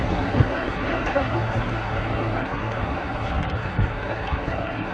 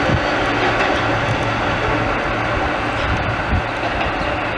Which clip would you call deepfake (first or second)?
first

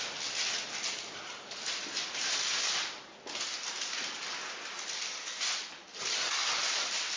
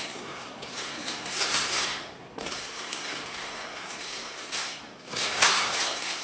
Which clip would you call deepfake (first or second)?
second